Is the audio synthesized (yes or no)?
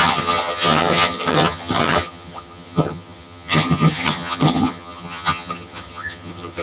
yes